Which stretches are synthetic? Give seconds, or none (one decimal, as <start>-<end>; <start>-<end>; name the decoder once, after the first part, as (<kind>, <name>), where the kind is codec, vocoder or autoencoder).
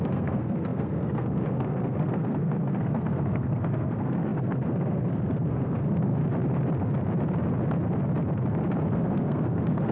0.0-6.2 (codec, SNAC); 8.8-9.9